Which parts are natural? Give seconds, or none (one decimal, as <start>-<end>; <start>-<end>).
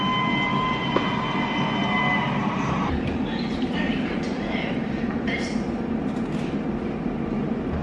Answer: 0.0-2.4; 6.3-7.8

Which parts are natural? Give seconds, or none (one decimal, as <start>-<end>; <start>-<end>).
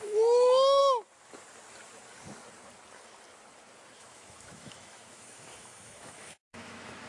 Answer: 0.8-4.0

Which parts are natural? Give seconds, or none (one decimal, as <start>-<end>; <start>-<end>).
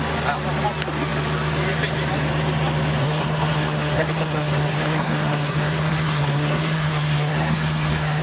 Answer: 0.0-3.0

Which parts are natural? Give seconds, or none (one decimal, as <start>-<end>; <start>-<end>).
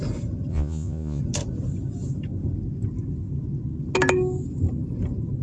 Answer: 0.0-0.5; 1.2-5.4